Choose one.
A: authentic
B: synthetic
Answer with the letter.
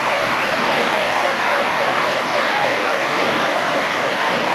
B